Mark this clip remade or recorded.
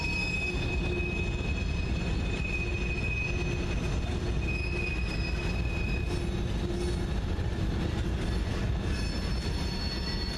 recorded